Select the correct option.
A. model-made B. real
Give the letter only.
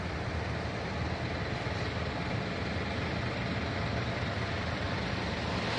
B